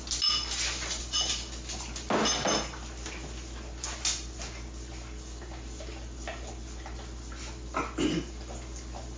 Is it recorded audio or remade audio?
recorded